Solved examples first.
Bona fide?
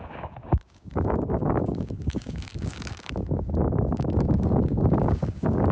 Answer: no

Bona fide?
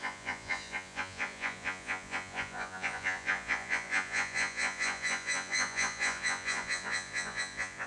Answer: no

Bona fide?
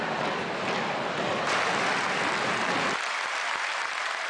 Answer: yes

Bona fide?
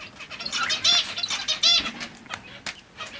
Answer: yes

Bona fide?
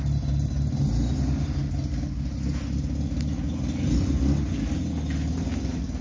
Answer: yes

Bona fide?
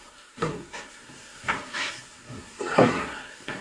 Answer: no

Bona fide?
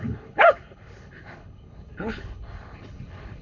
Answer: no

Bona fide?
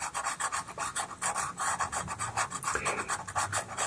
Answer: yes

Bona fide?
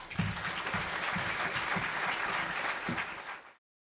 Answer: yes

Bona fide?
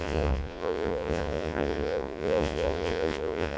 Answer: no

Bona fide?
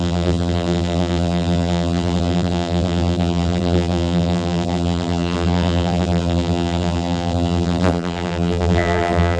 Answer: no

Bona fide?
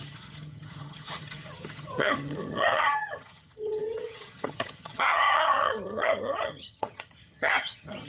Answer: no